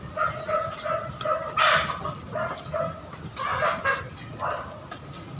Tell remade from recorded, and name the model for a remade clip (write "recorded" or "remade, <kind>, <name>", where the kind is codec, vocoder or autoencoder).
recorded